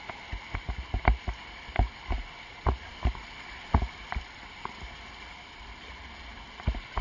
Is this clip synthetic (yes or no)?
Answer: no